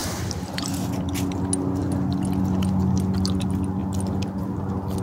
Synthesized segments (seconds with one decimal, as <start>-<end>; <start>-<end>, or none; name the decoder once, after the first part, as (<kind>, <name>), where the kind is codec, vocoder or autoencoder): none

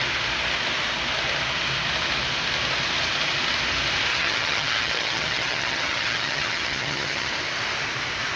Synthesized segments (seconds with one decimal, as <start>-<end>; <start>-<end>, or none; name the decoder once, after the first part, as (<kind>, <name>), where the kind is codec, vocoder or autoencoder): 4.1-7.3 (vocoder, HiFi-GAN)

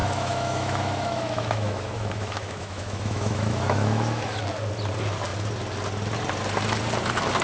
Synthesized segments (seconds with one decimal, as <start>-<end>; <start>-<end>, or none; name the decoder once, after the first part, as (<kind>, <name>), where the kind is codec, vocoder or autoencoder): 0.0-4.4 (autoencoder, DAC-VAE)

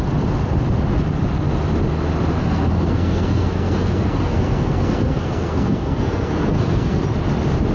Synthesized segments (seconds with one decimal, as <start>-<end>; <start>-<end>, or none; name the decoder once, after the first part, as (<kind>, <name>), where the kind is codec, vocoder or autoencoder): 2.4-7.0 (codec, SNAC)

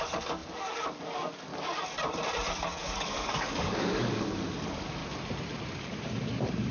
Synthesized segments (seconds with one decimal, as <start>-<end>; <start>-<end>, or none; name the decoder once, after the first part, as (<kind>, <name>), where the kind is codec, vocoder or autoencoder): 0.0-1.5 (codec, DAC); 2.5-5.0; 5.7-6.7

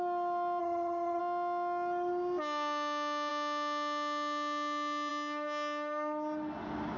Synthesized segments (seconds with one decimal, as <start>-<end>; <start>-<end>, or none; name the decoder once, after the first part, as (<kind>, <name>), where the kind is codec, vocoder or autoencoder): 0.6-1.2 (vocoder, HiFi-GAN)